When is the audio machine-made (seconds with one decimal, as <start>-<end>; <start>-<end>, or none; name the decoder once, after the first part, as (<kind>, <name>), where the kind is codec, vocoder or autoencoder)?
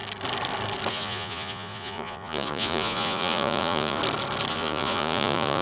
0.9-4.0 (vocoder, Vocos); 4.5-5.6